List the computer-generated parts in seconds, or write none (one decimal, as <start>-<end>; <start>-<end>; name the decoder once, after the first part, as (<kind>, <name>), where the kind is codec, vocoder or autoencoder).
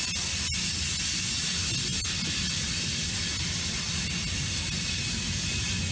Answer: none